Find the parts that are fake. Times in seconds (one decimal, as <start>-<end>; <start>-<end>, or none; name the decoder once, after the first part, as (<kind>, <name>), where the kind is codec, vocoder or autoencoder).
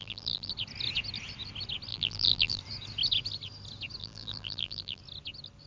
0.0-0.5 (vocoder, BigVGAN v2); 1.9-2.6; 4.0-5.0